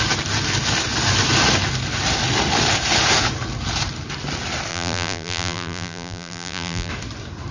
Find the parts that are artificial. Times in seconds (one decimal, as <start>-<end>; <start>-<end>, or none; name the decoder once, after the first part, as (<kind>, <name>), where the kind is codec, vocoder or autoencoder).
4.7-6.9 (vocoder, BigVGAN v2)

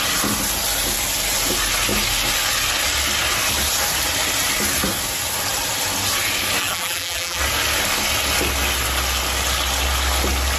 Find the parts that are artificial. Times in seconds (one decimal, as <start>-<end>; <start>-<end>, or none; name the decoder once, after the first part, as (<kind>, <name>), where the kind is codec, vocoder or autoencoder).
6.6-7.4 (vocoder, BigVGAN v2)